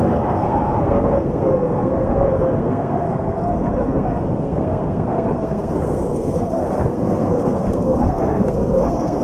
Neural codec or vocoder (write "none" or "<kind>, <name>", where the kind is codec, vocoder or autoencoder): codec, SNAC